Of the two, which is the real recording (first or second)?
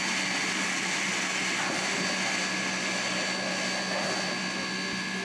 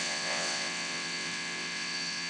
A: first